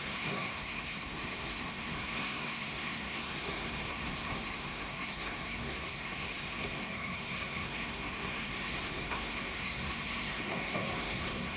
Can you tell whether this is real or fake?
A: fake